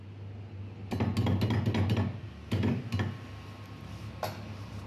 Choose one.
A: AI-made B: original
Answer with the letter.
B